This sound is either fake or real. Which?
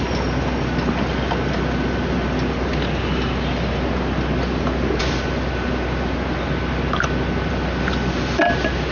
real